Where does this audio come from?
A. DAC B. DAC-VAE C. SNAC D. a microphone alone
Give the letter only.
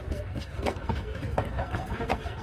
C